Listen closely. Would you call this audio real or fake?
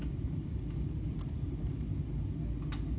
real